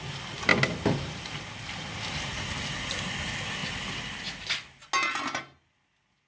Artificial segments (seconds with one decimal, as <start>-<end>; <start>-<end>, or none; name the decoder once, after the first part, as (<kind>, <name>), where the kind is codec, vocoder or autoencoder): none